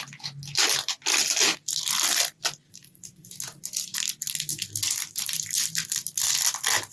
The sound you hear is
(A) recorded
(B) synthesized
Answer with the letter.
A